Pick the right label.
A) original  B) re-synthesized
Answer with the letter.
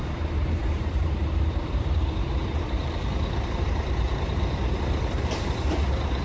B